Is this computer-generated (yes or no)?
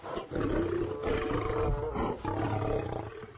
no